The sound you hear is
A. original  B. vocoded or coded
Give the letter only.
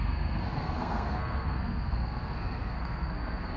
B